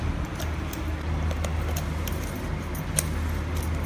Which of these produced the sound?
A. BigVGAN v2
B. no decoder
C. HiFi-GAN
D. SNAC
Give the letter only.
B